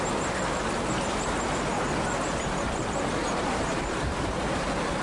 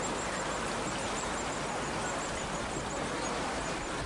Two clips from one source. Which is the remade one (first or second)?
first